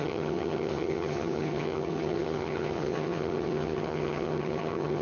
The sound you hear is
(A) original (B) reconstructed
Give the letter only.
B